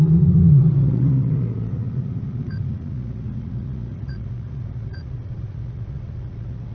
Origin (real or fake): fake